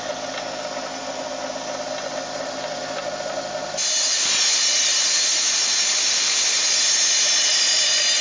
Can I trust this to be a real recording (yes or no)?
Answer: yes